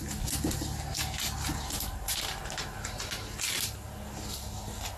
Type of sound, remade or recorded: recorded